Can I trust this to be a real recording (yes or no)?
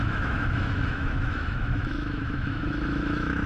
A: no